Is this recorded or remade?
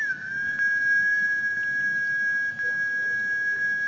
recorded